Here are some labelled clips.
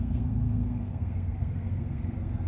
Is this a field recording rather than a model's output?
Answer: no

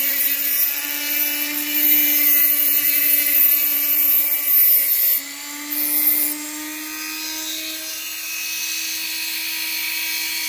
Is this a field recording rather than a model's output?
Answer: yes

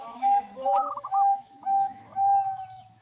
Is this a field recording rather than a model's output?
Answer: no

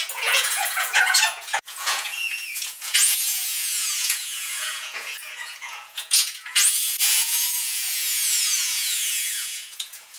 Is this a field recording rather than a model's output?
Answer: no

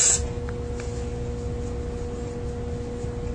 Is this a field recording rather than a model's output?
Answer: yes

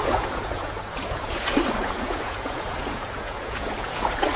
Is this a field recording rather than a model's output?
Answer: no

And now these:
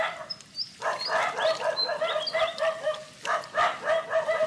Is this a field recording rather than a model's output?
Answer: yes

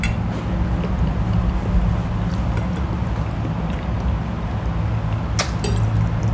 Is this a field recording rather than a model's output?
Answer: yes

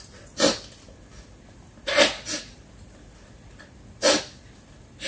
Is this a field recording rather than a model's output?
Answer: yes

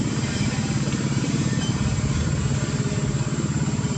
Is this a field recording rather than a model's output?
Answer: no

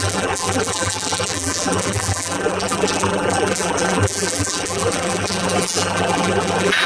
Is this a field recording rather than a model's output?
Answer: no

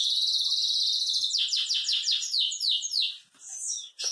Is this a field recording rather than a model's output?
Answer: yes